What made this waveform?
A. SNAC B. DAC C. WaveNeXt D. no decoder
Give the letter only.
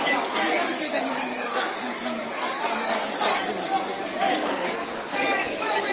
B